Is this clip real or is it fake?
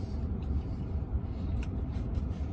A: fake